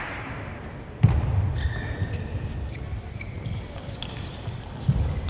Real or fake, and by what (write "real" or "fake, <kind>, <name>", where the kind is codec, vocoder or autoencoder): fake, vocoder, BigVGAN v2